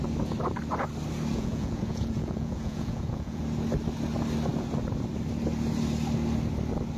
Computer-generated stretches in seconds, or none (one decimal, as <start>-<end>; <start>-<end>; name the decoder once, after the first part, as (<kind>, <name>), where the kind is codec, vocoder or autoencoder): 1.3-3.4 (vocoder, Vocos)